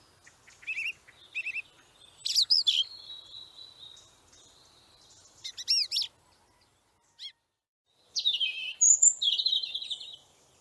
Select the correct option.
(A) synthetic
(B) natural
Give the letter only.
B